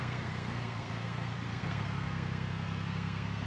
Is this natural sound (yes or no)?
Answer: no